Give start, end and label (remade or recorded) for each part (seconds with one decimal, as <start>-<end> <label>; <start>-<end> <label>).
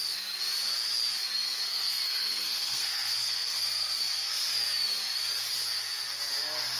0.0-1.7 recorded; 1.7-4.0 remade; 4.0-6.8 recorded